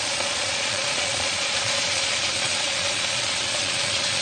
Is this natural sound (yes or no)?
no